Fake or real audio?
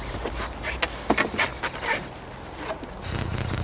real